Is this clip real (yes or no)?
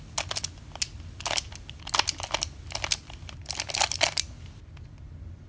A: yes